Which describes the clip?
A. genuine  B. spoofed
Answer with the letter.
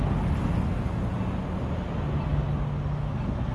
A